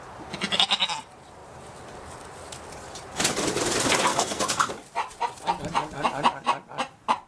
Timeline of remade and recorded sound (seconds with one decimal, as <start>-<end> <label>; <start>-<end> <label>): 0.0-4.1 recorded; 4.1-4.7 remade; 4.7-7.3 recorded